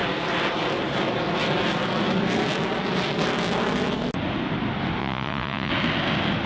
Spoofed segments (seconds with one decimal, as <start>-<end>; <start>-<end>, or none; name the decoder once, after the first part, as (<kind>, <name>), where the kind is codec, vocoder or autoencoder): 5.0-5.7 (vocoder, Vocos)